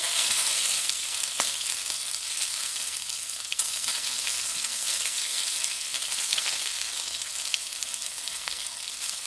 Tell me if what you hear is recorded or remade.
remade